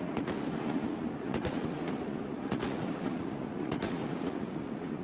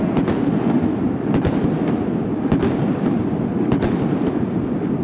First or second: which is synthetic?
first